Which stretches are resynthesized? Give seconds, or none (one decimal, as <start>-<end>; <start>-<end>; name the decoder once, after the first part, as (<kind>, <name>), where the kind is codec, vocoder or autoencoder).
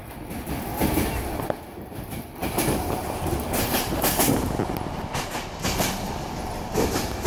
none